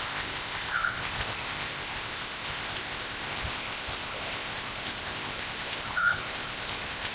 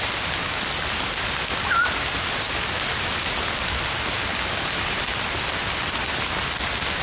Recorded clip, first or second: second